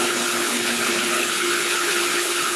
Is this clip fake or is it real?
fake